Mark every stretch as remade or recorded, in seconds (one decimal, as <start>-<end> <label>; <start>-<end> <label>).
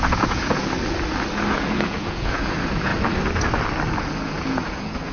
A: 0.0-0.6 remade; 0.6-1.7 recorded; 1.7-2.9 remade; 2.9-4.0 recorded; 4.0-5.1 remade